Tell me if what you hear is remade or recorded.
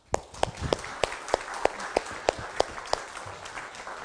recorded